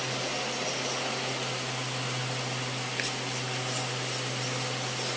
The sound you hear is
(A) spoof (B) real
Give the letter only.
B